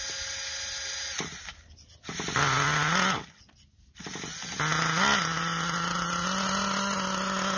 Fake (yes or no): no